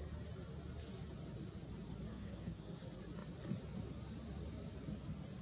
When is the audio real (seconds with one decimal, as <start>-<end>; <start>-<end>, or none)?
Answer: 0.0-2.1; 2.8-5.4